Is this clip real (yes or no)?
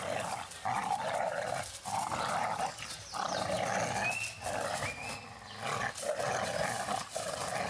yes